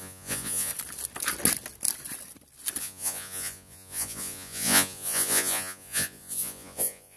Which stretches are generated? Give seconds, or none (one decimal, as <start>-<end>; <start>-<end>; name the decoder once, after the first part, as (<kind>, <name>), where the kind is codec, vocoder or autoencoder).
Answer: 0.0-0.7 (vocoder, Vocos); 2.8-7.2